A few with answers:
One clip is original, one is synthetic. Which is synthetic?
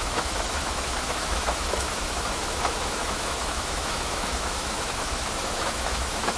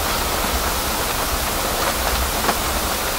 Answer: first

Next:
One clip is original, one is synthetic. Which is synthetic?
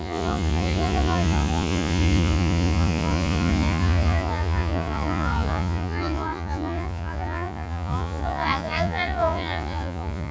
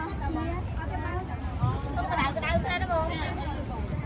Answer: first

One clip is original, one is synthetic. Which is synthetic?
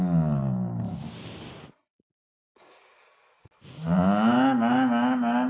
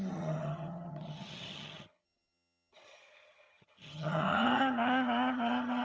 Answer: second